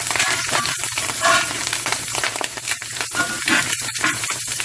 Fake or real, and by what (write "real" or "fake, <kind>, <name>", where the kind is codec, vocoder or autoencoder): fake, vocoder, BigVGAN v2